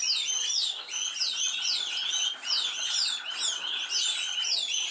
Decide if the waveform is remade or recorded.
recorded